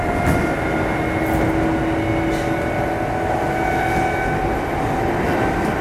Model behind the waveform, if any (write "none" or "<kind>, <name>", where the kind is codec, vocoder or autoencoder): none